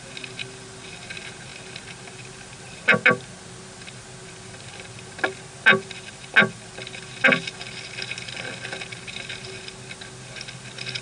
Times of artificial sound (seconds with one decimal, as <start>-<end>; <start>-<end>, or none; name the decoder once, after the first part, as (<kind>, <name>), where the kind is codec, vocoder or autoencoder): none